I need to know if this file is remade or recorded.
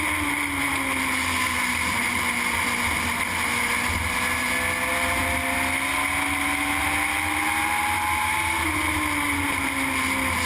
recorded